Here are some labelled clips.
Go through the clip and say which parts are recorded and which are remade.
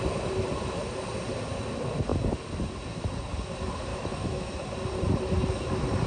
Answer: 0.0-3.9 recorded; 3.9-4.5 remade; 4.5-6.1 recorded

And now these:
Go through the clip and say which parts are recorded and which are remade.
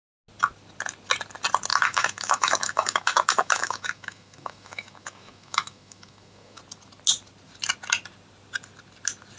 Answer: 0.0-1.7 recorded; 1.7-6.6 remade; 6.6-9.4 recorded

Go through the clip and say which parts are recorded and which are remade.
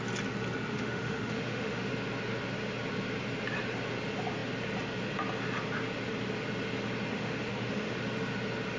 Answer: 0.0-0.7 recorded; 0.7-1.9 remade; 1.9-7.1 recorded; 7.1-7.9 remade; 7.9-8.8 recorded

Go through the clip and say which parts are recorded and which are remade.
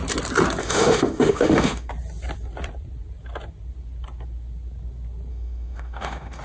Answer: 0.0-0.6 recorded; 0.6-1.9 remade; 1.9-5.3 recorded; 5.3-6.4 remade